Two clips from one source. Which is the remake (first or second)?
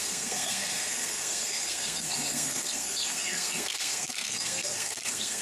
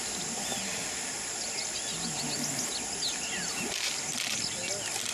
first